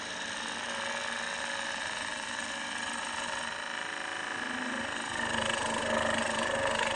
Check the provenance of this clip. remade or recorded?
recorded